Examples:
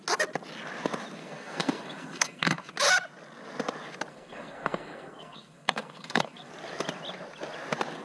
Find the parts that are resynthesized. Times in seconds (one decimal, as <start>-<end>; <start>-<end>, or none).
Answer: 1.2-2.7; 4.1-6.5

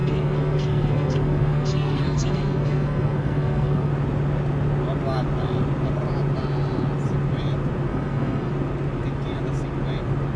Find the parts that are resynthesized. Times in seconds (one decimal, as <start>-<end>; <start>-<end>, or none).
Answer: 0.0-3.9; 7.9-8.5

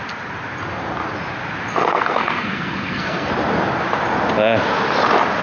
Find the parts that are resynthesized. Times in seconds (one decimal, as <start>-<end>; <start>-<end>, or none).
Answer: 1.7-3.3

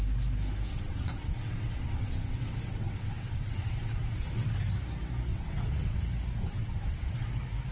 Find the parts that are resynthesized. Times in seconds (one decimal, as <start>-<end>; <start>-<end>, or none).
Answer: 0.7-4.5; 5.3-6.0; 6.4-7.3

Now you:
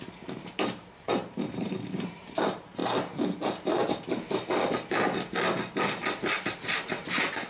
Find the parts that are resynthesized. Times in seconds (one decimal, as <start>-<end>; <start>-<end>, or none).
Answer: 0.0-2.8; 6.3-7.5

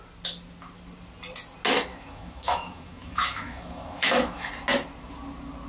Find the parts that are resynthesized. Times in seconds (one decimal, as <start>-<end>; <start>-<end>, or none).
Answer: 1.9-4.5